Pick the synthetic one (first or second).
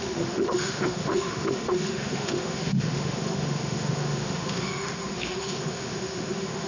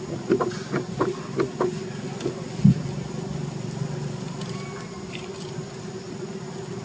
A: first